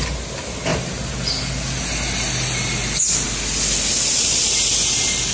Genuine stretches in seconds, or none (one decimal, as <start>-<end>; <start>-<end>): 0.0-5.3